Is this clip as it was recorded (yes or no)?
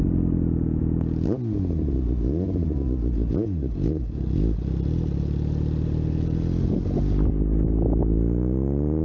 yes